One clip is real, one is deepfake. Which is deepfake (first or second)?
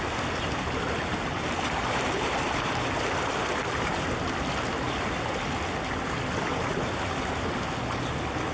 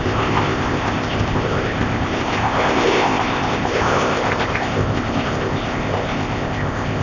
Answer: second